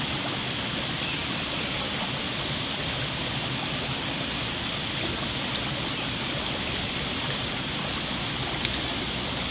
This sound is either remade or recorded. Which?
recorded